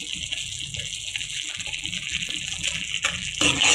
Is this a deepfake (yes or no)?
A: yes